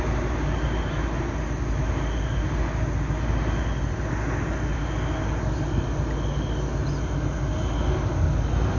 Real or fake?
real